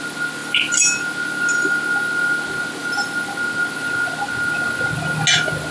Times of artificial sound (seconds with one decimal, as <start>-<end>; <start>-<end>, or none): none